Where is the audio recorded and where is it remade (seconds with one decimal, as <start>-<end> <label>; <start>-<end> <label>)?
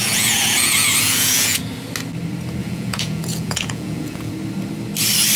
0.0-1.6 remade; 1.6-2.6 recorded; 2.6-4.3 remade; 4.3-5.4 recorded